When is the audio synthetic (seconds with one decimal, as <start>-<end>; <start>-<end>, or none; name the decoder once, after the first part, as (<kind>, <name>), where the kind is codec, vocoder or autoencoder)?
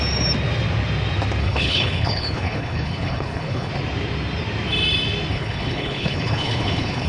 1.4-3.7 (codec, HILCodec); 5.3-7.1